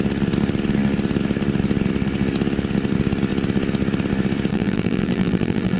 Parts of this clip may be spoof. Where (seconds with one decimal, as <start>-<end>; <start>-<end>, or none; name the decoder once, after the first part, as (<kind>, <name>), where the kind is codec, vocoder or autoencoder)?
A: 4.5-5.8 (vocoder, BigVGAN v2)